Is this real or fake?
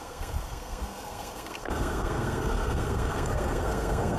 fake